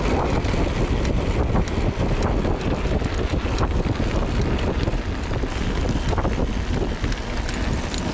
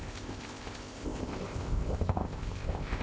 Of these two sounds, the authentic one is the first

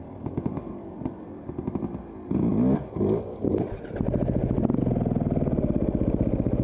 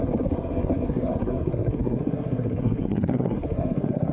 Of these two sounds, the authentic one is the first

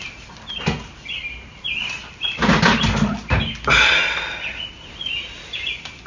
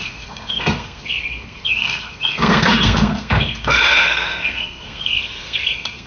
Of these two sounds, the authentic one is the first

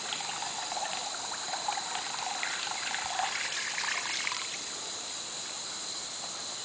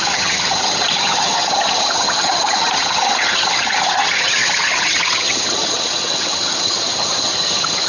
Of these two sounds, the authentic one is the first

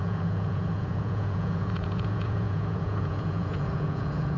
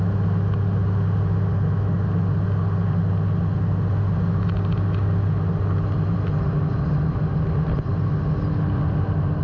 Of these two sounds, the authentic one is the second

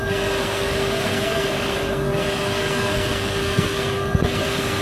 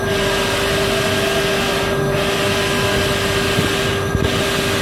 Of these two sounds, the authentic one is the second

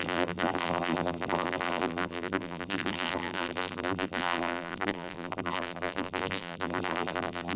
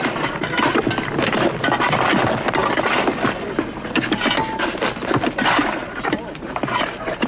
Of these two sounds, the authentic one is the second